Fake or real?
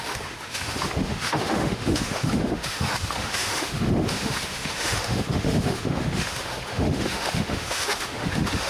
fake